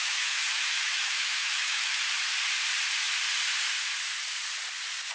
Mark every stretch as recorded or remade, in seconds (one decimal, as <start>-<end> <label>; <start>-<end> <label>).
0.0-2.0 remade; 2.0-5.1 recorded